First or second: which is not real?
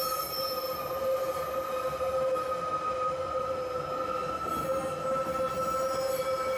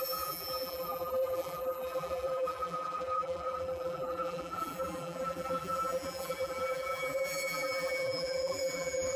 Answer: second